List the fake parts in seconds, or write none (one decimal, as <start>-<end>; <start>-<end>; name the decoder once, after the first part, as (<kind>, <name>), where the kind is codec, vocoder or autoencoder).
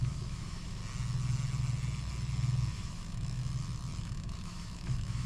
0.0-0.8 (autoencoder, DAC-VAE); 2.7-3.4; 4.0-5.3